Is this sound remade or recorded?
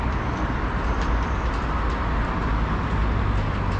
recorded